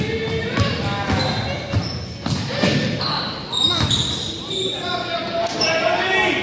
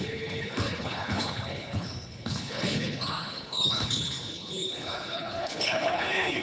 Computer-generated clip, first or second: second